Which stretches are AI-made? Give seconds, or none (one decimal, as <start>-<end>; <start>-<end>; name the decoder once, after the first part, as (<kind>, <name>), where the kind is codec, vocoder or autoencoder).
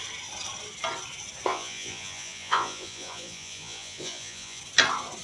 1.5-4.6 (vocoder, Vocos)